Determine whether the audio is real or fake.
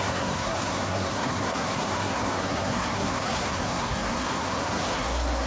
fake